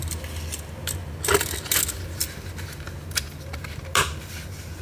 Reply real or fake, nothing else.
real